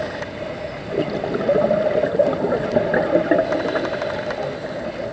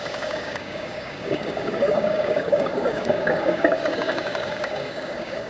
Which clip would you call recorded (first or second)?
first